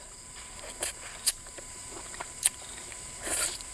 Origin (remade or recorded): remade